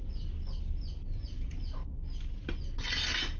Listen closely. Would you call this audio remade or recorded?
recorded